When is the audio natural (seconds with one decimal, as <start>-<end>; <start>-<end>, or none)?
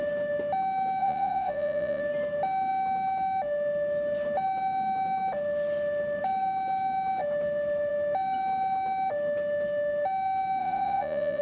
0.0-1.0; 2.0-10.6